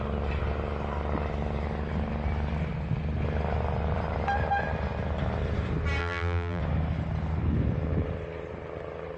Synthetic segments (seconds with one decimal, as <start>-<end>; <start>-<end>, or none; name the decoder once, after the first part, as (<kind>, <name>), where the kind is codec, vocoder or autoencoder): 6.0-6.6 (vocoder, BigVGAN v2)